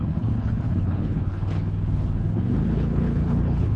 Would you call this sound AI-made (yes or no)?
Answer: yes